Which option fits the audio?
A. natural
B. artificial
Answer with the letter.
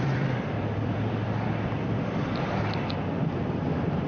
B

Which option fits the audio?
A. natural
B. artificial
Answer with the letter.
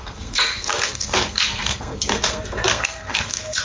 B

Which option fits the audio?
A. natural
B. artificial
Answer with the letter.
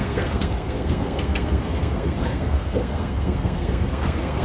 B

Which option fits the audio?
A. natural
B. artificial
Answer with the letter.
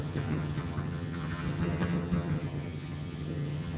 B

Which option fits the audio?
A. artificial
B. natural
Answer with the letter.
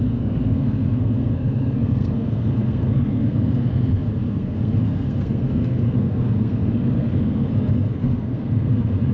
A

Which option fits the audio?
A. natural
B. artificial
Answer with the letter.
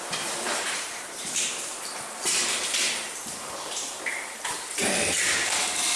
B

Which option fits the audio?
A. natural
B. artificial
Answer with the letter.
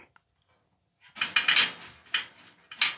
A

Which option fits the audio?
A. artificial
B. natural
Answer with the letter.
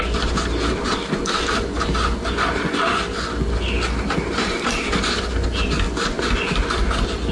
B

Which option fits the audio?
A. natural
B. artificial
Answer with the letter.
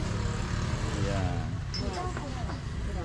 A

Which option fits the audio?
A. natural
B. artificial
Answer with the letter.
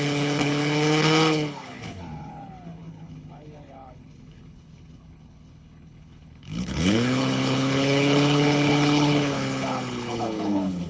B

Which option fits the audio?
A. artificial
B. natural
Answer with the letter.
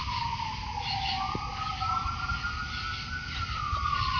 B